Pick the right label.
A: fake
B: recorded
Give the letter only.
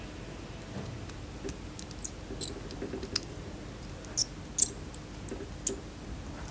B